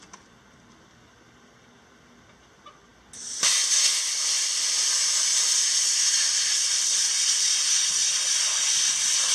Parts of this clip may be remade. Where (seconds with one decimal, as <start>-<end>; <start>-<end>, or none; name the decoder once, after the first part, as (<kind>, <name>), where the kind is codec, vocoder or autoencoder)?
none